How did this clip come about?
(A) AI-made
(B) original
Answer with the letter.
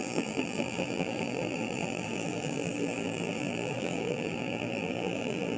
A